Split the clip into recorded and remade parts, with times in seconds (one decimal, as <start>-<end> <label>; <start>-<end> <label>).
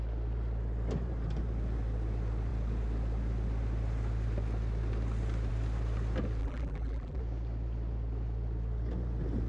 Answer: 0.0-6.4 recorded; 6.4-7.2 remade; 7.2-9.5 recorded